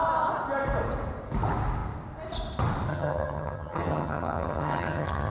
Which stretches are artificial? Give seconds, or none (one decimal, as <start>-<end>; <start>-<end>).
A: 2.9-5.3